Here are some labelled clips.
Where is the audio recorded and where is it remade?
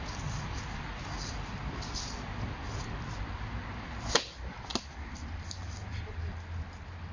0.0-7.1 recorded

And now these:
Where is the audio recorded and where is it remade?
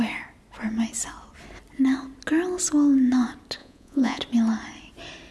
0.0-3.6 recorded; 3.6-4.2 remade; 4.2-5.3 recorded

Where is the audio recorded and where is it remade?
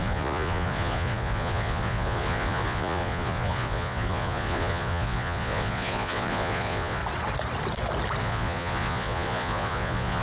0.0-7.0 remade; 7.0-8.2 recorded; 8.2-10.2 remade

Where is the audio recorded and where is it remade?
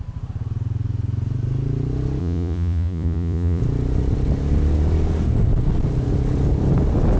0.0-2.2 recorded; 2.2-3.6 remade; 3.6-7.2 recorded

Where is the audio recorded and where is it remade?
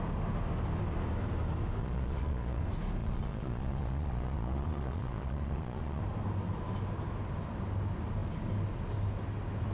0.0-1.8 recorded; 1.8-2.6 remade; 2.6-3.0 recorded; 3.0-6.0 remade; 6.0-9.7 recorded